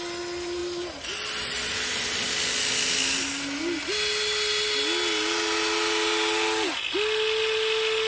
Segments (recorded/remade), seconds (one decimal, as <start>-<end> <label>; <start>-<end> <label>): 0.0-8.1 recorded